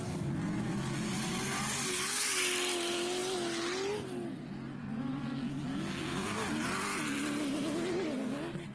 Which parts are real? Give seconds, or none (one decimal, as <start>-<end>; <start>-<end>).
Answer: 0.0-8.7